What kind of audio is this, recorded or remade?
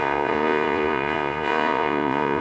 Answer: remade